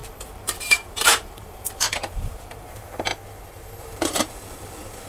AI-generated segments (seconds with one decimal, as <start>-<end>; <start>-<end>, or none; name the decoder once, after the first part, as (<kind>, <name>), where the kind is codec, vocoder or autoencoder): 0.0-3.1 (vocoder, BigVGAN v2); 3.8-5.1